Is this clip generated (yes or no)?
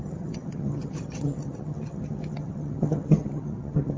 yes